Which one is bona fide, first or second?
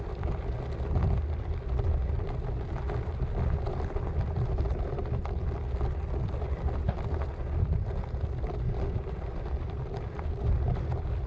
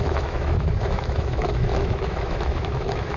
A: first